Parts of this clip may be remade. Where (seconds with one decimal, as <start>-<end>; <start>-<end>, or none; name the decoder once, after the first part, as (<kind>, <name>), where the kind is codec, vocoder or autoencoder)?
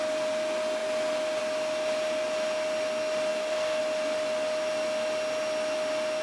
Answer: 3.3-3.8 (codec, SNAC)